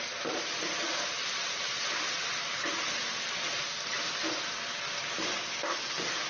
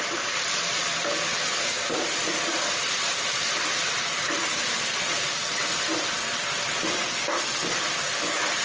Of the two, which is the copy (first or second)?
second